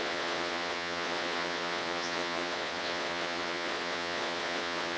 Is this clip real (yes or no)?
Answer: no